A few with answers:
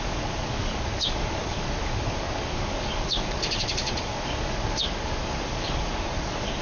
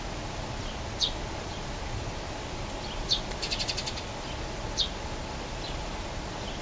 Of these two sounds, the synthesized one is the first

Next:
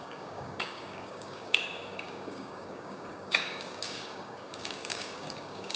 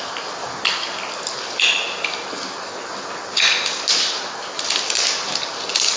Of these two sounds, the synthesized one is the first